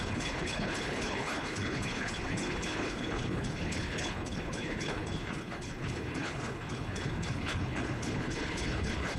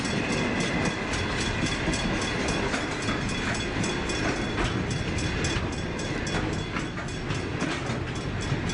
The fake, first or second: first